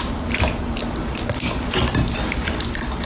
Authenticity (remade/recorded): recorded